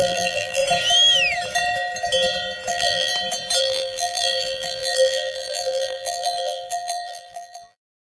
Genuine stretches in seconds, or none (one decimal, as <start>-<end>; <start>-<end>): 0.6-2.7; 3.1-3.6